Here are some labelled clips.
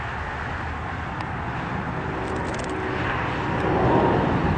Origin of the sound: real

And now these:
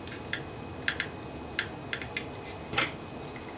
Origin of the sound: real